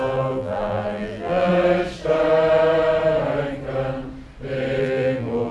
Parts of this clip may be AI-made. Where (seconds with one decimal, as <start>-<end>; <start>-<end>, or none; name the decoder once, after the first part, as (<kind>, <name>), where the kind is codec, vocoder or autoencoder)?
0.0-1.5 (vocoder, BigVGAN v2); 4.8-5.5